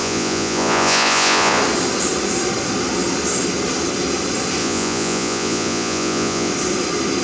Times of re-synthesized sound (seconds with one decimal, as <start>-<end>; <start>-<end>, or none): 0.0-1.6; 4.6-6.5